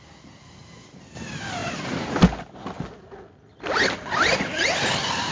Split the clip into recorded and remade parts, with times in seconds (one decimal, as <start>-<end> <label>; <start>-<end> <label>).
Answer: 0.0-5.3 recorded